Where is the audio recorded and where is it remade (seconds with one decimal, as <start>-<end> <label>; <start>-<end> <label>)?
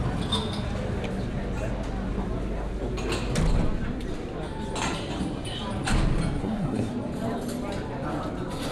0.0-6.4 recorded; 6.4-6.9 remade; 6.9-8.7 recorded